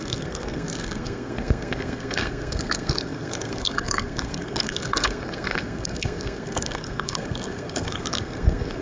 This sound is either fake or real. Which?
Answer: fake